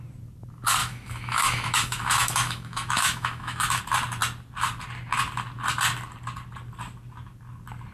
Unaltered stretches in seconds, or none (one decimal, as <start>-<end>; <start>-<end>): 0.0-0.8; 3.8-7.9